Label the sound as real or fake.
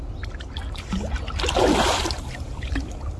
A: real